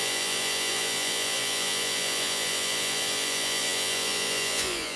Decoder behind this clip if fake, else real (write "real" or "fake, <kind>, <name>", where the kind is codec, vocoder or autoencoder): fake, vocoder, Vocos